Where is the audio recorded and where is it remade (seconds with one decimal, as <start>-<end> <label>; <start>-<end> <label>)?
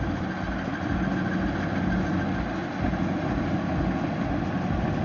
0.0-5.0 recorded